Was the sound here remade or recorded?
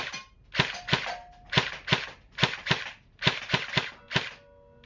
recorded